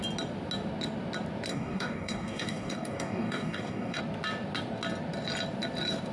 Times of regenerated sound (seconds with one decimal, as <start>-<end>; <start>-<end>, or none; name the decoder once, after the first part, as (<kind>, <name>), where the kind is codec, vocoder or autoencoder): 1.5-4.0 (codec, DAC)